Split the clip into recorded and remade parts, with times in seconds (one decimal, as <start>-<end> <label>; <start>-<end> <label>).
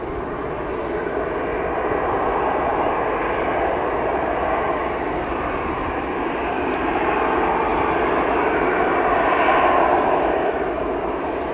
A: 0.0-11.5 recorded